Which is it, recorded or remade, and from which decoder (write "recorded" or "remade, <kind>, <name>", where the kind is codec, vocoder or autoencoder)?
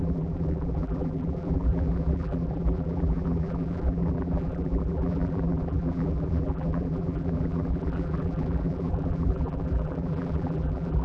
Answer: remade, vocoder, BigVGAN v2